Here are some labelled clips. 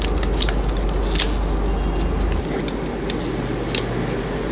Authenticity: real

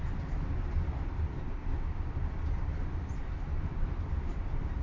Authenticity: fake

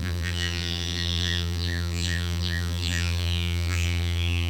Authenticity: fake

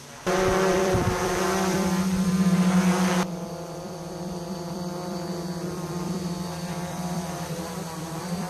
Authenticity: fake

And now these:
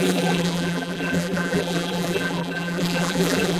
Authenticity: fake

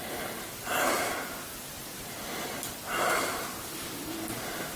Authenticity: fake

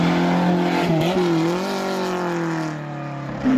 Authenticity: real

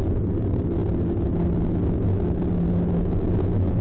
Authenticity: real